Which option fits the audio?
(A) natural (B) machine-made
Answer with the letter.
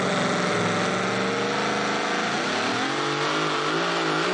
A